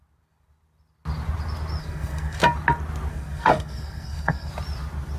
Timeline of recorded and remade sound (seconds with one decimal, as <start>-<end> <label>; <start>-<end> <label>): 0.0-1.8 recorded; 1.8-2.4 remade; 2.4-3.1 recorded; 3.1-4.5 remade; 4.5-5.2 recorded